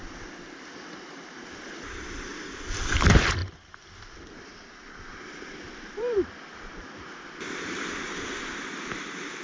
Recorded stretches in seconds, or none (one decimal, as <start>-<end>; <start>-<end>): 0.0-3.4; 6.7-9.4